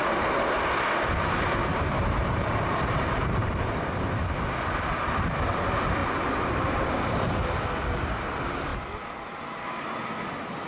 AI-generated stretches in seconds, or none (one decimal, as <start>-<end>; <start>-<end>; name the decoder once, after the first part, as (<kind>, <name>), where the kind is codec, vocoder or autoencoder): 1.7-4.2 (vocoder, BigVGAN v2); 6.0-7.3